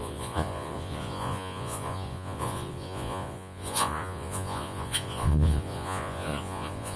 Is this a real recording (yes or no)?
no